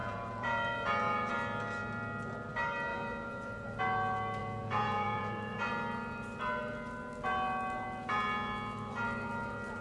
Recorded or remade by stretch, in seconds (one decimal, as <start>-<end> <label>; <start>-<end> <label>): 0.0-1.3 remade; 1.3-2.9 recorded; 2.9-3.8 remade; 3.8-4.4 recorded; 4.4-5.7 remade; 5.7-9.8 recorded